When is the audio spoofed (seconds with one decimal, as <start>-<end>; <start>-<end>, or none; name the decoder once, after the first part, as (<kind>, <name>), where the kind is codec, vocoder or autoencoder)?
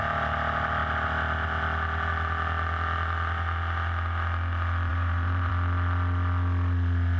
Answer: 4.9-5.5 (vocoder, BigVGAN v2)